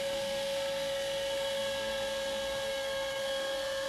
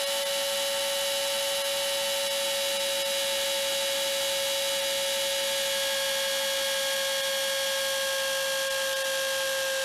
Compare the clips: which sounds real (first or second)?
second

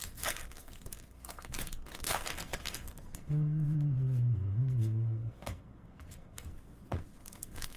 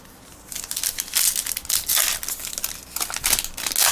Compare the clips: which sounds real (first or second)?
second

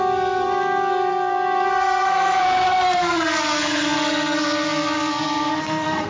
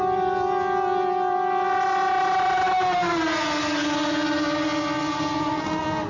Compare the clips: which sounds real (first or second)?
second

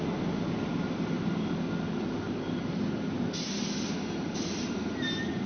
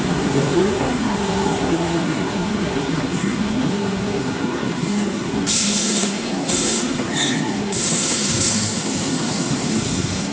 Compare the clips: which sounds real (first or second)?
first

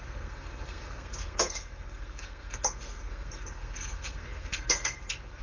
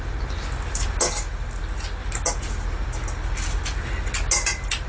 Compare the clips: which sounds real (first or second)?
second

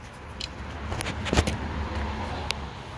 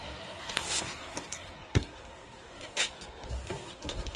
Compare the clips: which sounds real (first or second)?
first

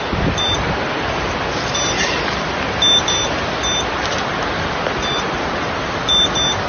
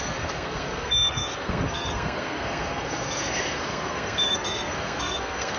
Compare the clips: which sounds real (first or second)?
first